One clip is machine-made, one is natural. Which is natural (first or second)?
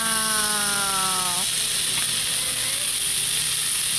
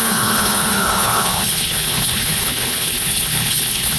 first